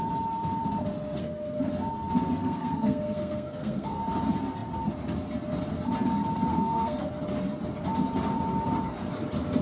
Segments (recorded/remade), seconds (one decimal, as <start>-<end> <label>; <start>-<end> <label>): 0.0-1.2 recorded; 1.2-1.7 remade; 1.7-2.4 recorded; 2.4-4.0 remade; 4.0-6.5 recorded; 6.5-7.1 remade; 7.1-9.6 recorded